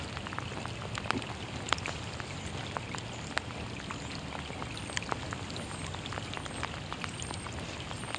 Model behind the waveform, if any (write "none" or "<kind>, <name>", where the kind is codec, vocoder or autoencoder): none